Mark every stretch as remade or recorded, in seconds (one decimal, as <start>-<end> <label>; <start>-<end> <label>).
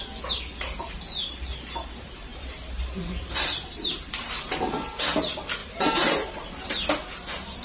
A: 0.0-2.3 recorded; 2.3-4.5 remade; 4.5-5.6 recorded; 5.6-6.5 remade; 6.5-7.6 recorded